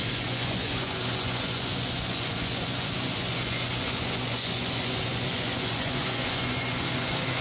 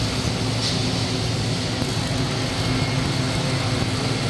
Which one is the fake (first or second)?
first